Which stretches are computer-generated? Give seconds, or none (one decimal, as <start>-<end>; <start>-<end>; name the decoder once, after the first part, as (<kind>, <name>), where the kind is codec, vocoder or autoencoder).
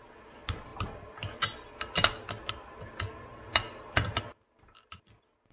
none